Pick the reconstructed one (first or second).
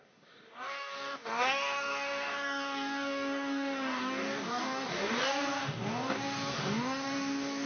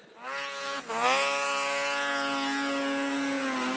first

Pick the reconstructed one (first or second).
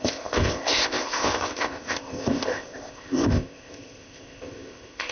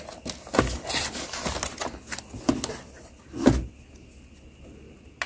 first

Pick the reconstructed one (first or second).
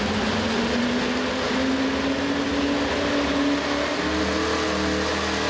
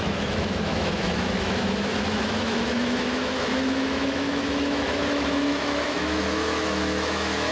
second